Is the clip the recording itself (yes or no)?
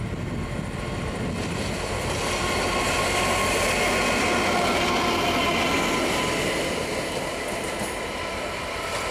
yes